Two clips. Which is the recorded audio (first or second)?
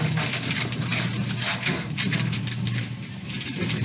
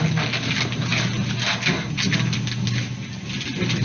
second